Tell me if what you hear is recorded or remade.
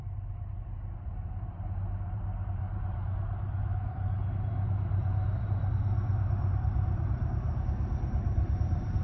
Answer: remade